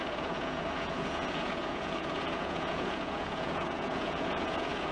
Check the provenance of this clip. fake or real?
fake